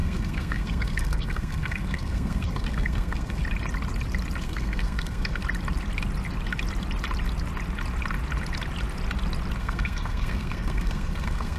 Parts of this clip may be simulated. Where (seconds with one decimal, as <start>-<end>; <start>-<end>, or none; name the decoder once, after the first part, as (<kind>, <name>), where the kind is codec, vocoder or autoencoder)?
0.0-3.4 (codec, SNAC); 4.4-5.4; 9.6-11.6